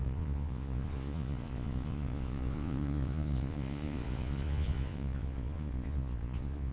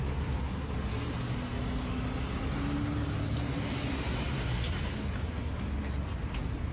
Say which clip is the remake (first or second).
first